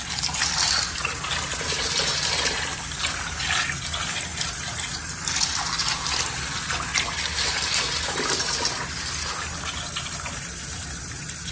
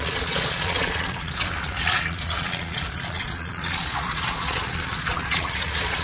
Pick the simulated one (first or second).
second